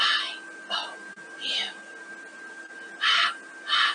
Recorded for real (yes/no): yes